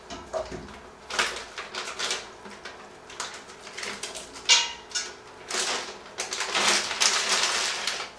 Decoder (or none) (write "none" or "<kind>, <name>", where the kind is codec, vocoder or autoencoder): none